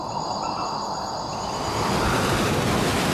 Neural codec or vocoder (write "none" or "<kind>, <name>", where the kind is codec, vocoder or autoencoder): none